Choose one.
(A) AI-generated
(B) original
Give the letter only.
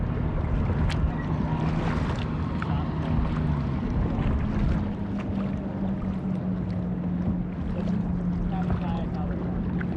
B